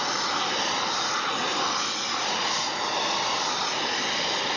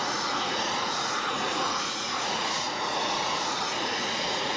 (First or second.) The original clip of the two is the first